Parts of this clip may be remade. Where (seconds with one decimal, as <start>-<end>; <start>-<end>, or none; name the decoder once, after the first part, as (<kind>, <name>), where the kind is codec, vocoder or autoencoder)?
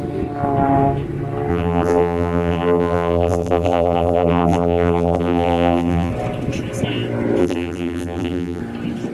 1.5-6.1 (vocoder, BigVGAN v2); 7.4-8.6